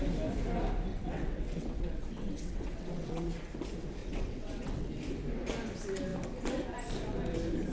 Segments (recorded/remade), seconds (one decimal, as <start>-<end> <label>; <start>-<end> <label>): 0.0-0.9 recorded; 0.9-3.3 remade; 3.3-4.0 recorded; 4.0-4.9 remade; 4.9-7.7 recorded